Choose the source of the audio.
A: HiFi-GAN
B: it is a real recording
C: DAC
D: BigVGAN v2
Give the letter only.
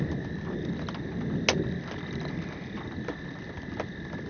B